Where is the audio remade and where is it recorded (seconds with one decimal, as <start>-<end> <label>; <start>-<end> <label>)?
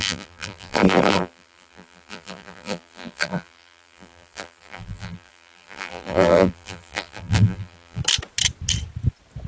0.0-8.0 remade; 8.0-9.5 recorded